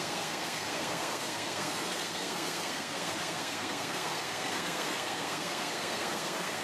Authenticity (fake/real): fake